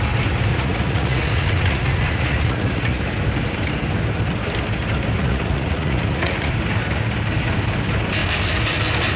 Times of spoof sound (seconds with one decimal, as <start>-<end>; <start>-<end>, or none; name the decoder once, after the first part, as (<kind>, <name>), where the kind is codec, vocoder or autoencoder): 0.5-3.0 (vocoder, Vocos); 5.2-6.5